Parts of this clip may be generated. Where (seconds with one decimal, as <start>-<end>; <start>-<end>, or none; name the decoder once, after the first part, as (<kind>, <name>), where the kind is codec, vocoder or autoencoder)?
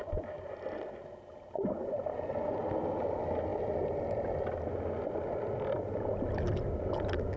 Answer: none